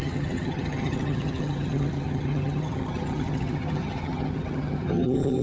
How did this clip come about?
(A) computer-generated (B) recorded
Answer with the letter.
A